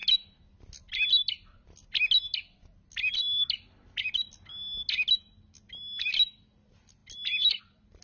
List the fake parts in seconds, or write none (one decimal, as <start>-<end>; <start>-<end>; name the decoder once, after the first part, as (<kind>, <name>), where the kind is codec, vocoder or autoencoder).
none